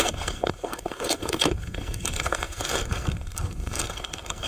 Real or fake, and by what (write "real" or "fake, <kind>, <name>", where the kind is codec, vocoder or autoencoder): fake, codec, SNAC